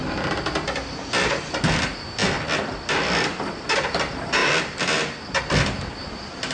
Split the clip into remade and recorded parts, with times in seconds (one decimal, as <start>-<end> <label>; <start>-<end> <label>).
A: 0.0-6.5 recorded